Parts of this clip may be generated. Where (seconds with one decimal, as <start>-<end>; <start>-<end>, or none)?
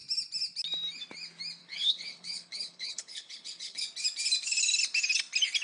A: 1.6-3.8